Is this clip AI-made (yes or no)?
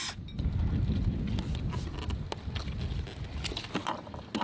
no